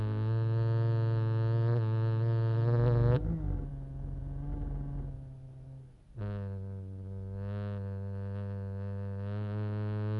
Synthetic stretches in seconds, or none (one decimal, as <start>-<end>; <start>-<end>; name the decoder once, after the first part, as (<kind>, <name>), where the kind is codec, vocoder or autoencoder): none